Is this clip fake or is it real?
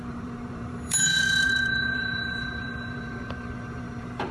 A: fake